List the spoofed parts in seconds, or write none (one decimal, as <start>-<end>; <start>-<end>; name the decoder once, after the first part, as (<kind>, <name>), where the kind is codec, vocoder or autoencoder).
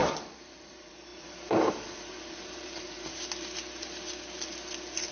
0.0-3.1 (vocoder, BigVGAN v2)